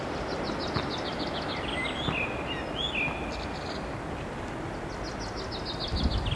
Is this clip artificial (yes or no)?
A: no